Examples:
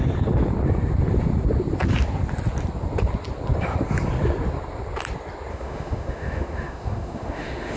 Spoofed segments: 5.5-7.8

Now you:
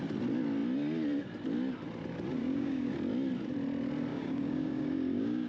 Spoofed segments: 2.4-2.9; 4.1-5.5

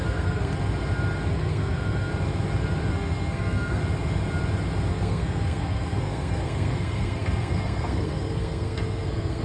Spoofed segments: 0.0-0.5; 1.3-2.1; 2.9-3.8; 4.9-9.4